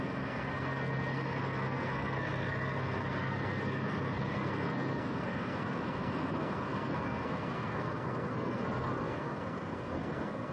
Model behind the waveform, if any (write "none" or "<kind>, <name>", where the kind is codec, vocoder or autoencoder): codec, SNAC